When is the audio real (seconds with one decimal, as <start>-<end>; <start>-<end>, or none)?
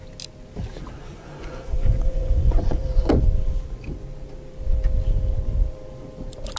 0.0-1.0; 3.1-6.6